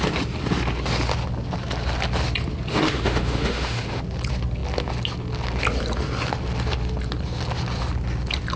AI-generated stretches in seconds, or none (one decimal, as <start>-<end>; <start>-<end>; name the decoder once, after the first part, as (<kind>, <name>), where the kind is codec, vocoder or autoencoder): 2.7-4.0 (autoencoder, DAC-VAE)